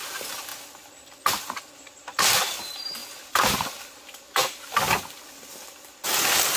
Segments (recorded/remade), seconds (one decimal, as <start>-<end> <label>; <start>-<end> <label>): 0.0-6.6 recorded